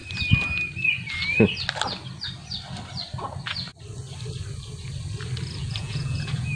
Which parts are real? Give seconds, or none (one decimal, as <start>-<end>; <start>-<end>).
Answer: 0.0-5.6